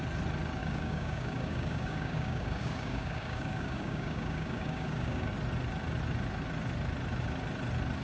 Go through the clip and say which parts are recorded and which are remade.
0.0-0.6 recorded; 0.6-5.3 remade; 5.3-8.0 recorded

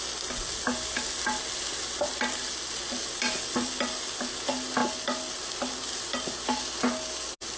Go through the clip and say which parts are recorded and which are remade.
0.0-7.6 recorded

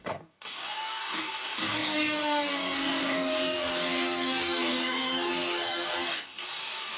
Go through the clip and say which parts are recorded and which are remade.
0.0-7.0 remade

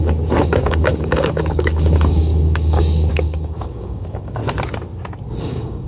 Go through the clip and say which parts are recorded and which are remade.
0.0-4.4 remade; 4.4-5.4 recorded; 5.4-5.9 remade